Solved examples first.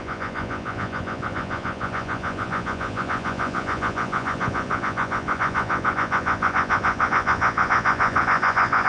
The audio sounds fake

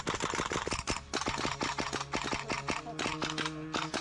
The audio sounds real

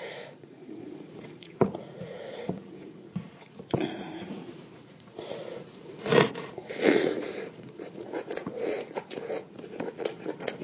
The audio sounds fake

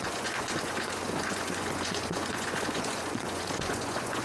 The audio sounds fake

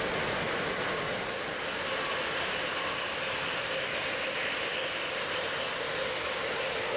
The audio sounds real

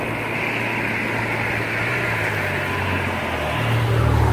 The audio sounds real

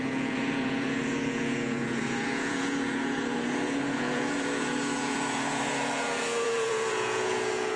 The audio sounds fake